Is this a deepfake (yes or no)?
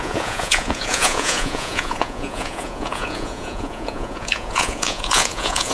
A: yes